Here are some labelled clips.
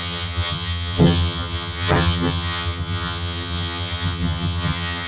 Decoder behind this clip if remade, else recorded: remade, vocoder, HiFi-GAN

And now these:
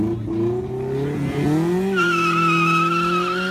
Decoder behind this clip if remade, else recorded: recorded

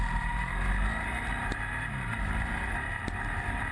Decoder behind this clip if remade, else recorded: recorded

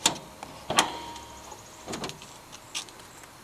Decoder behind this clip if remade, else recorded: recorded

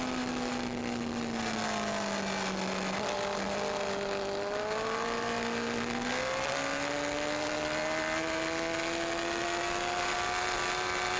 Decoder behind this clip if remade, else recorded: recorded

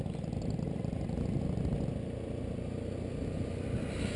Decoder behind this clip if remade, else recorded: recorded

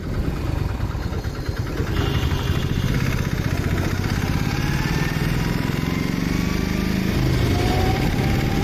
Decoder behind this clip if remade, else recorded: recorded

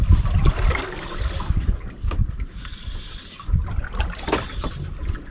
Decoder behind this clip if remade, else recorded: recorded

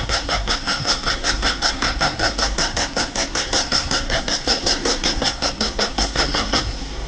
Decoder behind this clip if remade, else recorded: remade, codec, SNAC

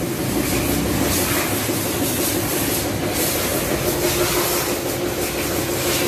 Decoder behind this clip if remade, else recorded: recorded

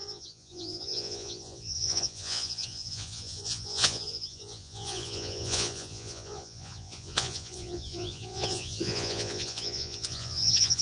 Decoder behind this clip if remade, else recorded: remade, vocoder, Vocos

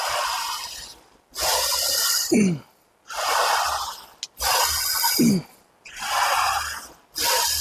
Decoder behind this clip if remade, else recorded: recorded